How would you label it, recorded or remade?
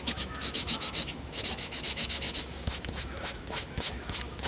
remade